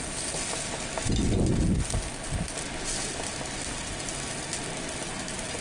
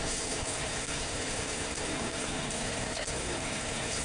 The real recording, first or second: first